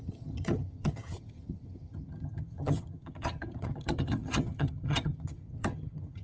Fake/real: fake